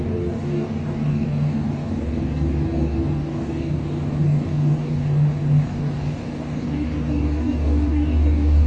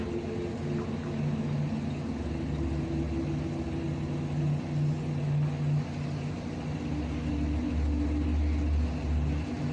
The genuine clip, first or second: second